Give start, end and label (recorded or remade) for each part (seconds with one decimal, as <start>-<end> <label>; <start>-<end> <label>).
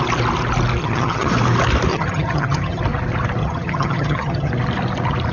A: 0.0-0.8 recorded; 0.8-1.3 remade; 1.3-1.9 recorded; 1.9-2.8 remade; 2.8-3.4 recorded; 3.4-4.5 remade; 4.5-5.3 recorded